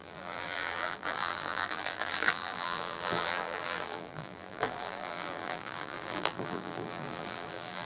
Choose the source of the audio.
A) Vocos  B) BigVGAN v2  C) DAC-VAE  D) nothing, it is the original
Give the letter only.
B